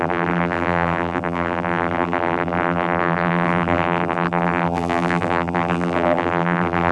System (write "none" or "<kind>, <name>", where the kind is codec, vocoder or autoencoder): vocoder, BigVGAN v2